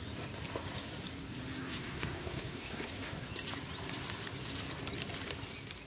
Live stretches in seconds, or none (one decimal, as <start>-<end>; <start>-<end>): 0.0-1.6; 3.3-5.9